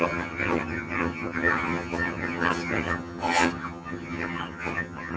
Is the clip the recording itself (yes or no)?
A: no